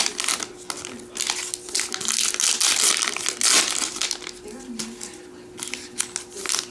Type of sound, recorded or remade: recorded